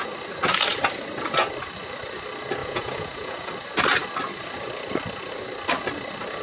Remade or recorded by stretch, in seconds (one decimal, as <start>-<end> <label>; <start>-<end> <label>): 0.0-2.6 recorded; 2.6-3.5 remade; 3.5-6.4 recorded